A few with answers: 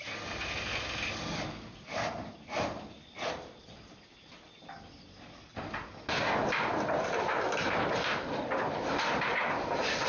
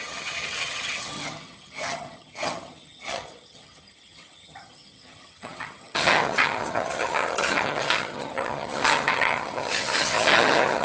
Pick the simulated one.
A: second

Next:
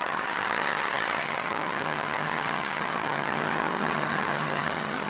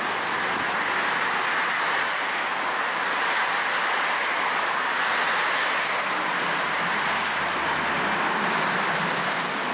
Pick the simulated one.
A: first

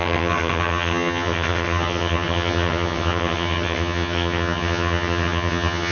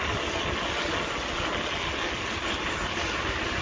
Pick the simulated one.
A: first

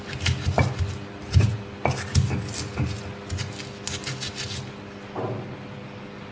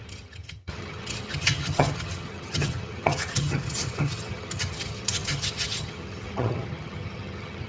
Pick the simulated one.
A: second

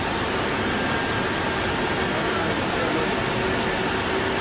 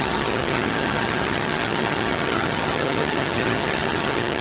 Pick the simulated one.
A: second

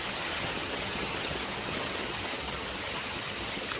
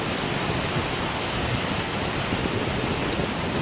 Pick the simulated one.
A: first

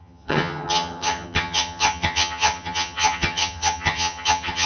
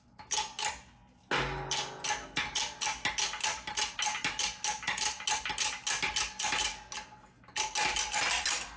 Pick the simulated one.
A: first